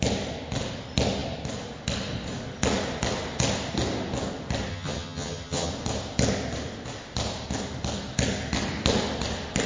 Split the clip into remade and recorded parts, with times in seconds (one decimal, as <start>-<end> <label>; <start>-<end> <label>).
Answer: 0.0-4.7 recorded; 4.7-5.7 remade; 5.7-9.7 recorded